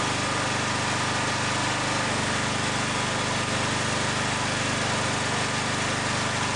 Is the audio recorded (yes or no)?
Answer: yes